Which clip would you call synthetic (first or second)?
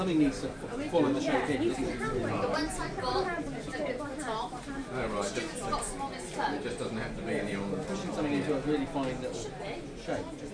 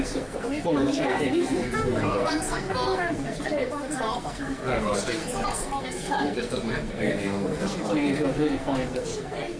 second